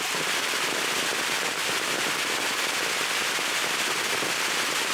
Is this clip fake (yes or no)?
no